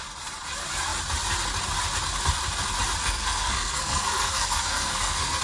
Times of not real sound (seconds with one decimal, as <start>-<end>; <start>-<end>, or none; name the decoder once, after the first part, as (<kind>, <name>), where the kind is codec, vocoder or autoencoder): 3.0-5.4 (codec, SNAC)